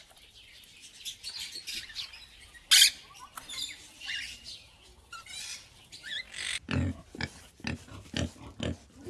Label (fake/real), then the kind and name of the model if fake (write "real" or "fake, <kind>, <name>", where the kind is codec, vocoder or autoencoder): real